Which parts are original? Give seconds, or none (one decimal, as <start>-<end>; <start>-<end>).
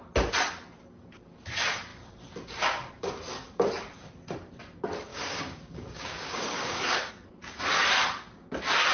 0.0-5.1; 7.1-8.9